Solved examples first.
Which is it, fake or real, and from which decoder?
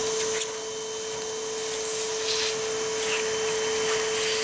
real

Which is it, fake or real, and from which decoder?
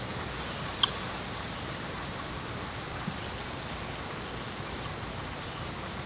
real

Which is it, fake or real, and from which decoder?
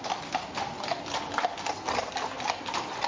real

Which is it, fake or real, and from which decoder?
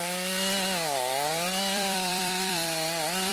fake, vocoder, BigVGAN v2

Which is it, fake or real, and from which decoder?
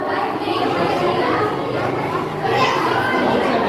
real